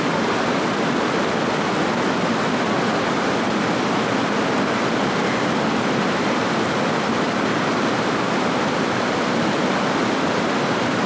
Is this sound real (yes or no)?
yes